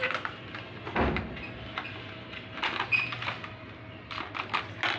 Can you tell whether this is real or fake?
real